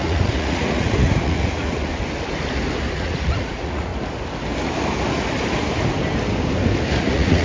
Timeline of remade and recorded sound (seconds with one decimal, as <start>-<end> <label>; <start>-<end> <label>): 0.0-1.9 remade; 1.9-2.9 recorded; 2.9-3.9 remade; 3.9-7.0 recorded; 7.0-7.4 remade